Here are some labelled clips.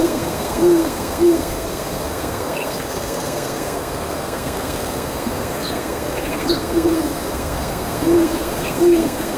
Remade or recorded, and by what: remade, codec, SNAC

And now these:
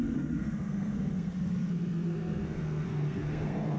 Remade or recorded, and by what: remade, codec, SNAC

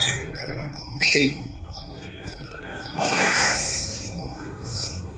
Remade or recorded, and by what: remade, codec, SNAC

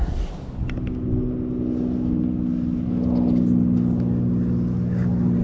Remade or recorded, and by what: recorded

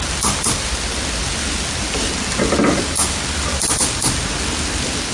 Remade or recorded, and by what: recorded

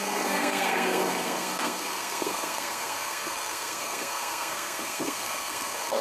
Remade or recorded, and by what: remade, codec, SNAC